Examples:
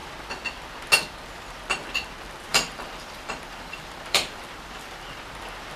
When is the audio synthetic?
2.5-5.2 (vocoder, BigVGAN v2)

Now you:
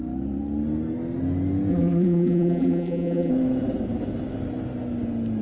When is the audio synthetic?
1.7-3.3 (vocoder, BigVGAN v2)

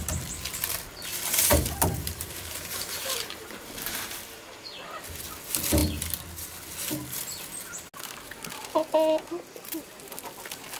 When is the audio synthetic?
1.5-4.5 (vocoder, BigVGAN v2)

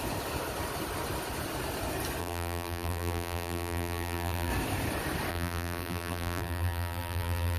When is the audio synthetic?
2.2-4.5 (vocoder, BigVGAN v2); 5.3-7.6

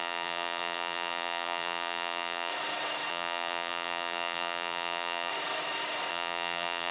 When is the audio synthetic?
0.0-2.5 (vocoder, BigVGAN v2); 3.1-5.3; 6.1-6.9

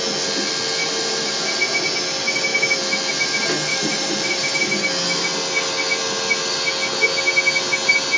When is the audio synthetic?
0.8-1.6 (vocoder, BigVGAN v2); 3.7-4.6

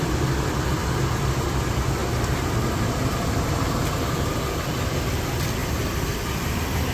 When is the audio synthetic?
none

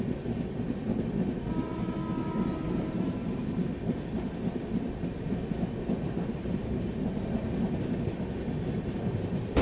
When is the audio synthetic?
none